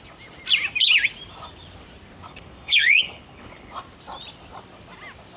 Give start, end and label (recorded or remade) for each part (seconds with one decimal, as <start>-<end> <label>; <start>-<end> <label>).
0.0-2.3 recorded; 2.3-3.7 remade; 3.7-5.4 recorded